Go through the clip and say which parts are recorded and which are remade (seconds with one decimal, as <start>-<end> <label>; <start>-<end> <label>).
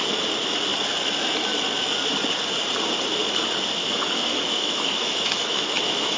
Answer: 0.0-3.8 recorded; 3.8-6.2 remade